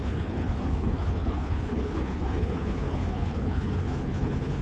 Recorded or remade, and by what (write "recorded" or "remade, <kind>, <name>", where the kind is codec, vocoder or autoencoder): remade, codec, HILCodec